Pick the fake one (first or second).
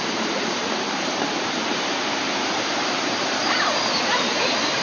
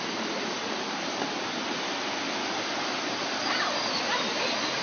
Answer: first